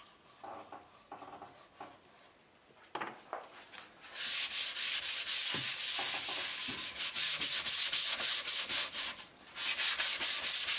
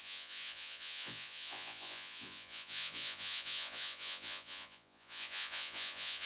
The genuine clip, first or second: first